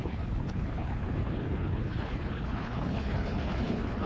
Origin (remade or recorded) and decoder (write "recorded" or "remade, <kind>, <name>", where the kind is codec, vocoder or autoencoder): remade, codec, HILCodec